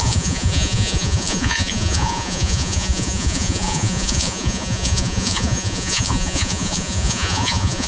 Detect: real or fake fake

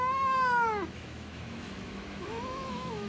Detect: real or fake fake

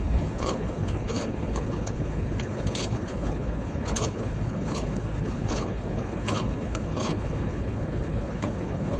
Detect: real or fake fake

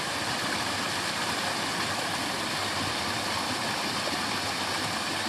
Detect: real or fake real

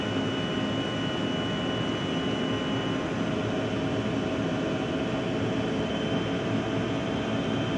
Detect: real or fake real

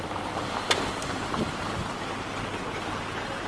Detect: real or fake real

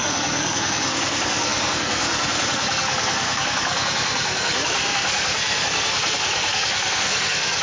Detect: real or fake fake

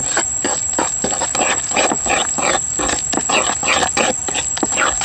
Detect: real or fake real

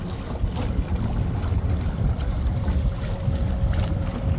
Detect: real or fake real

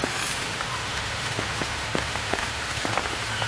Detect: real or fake fake